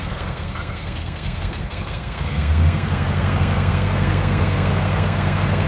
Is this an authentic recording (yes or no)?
no